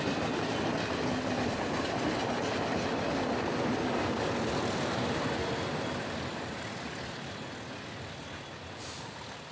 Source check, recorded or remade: recorded